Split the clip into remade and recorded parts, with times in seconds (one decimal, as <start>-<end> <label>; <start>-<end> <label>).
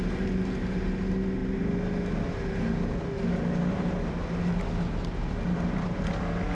0.0-6.5 recorded